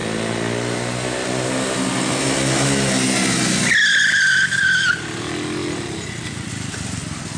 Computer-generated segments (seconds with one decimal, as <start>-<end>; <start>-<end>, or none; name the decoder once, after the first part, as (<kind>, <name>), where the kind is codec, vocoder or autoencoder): none